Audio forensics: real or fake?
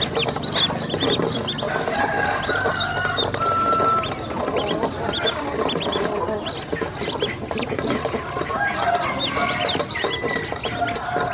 real